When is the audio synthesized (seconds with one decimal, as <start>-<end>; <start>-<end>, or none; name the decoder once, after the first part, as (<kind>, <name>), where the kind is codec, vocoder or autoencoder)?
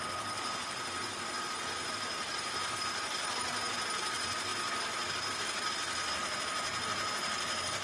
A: none